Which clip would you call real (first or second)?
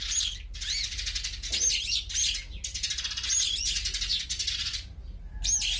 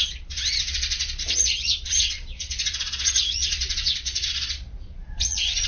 first